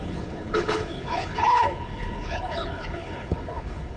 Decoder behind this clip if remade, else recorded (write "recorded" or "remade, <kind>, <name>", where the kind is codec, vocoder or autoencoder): remade, codec, HILCodec